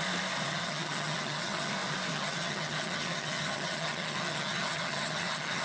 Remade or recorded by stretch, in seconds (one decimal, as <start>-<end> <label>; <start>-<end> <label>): 0.0-0.5 recorded; 0.5-1.7 remade; 1.7-2.1 recorded; 2.1-5.6 remade